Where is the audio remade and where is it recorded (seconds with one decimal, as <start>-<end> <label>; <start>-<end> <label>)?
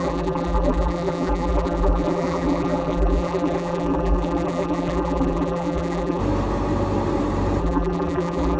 0.0-6.2 remade; 6.2-7.6 recorded; 7.6-8.6 remade